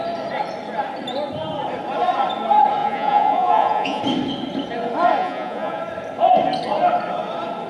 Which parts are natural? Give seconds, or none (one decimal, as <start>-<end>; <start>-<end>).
0.0-2.8; 4.0-5.2; 5.8-7.7